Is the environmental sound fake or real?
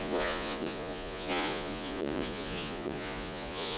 fake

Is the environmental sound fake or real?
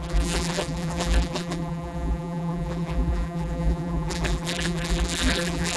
fake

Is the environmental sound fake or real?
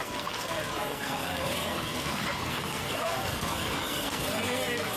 fake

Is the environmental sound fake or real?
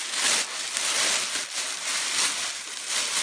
real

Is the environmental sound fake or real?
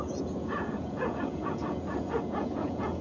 fake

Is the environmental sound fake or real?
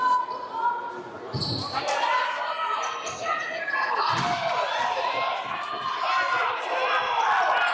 real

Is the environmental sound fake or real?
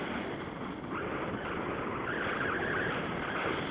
real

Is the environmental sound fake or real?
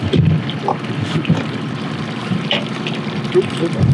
real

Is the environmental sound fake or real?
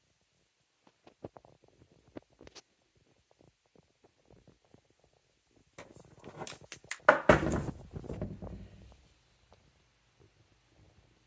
real